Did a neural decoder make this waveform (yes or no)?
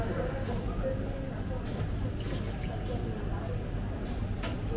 no